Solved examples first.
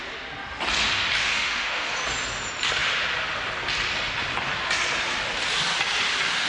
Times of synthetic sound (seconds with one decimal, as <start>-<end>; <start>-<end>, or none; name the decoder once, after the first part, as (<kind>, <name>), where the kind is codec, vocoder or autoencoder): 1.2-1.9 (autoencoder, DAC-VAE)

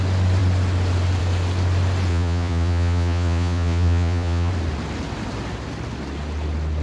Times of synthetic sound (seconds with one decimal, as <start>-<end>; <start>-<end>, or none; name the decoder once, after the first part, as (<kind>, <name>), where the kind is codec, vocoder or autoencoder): 2.1-4.5 (vocoder, Vocos)

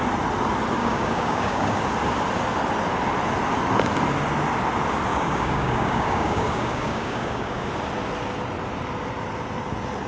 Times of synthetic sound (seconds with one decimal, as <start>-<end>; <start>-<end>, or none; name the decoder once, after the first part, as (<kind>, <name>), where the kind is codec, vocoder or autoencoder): 0.8-1.8 (codec, DAC); 5.1-7.7

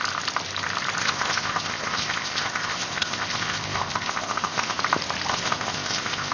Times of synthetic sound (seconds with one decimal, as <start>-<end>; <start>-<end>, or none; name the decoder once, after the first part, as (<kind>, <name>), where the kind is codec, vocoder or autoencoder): 1.0-4.8 (codec, ZipCodec); 5.3-6.3